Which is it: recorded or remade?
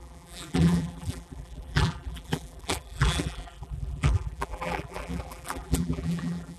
remade